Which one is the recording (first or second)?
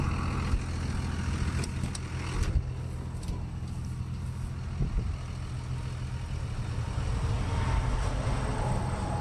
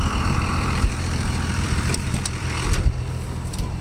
first